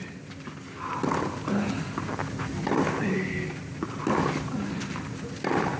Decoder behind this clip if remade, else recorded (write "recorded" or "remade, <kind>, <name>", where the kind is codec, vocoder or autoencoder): recorded